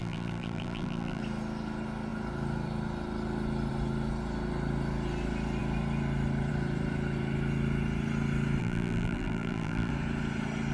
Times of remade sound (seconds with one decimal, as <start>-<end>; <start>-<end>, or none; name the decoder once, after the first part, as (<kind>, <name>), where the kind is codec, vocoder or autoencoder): 0.0-1.2 (vocoder, BigVGAN v2); 8.6-9.9